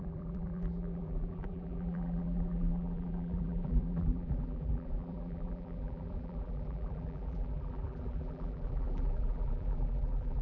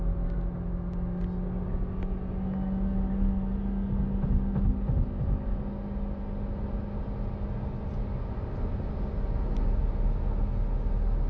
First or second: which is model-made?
first